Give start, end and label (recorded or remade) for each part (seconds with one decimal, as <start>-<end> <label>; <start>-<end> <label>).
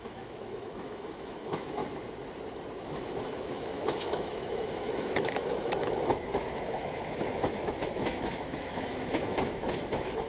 0.0-1.8 remade; 1.8-2.8 recorded; 2.8-10.3 remade